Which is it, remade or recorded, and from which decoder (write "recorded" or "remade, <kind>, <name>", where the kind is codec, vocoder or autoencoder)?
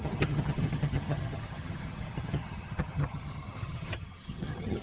remade, vocoder, HiFi-GAN